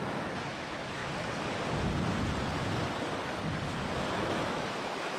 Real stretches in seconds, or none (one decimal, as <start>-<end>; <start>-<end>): 1.0-4.1